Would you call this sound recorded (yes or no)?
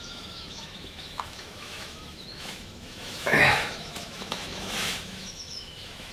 no